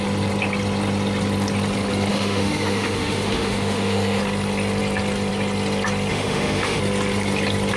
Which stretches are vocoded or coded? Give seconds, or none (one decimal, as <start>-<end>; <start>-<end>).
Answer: 2.1-4.2; 6.1-6.8